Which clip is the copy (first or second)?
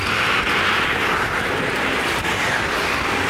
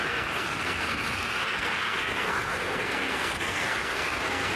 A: second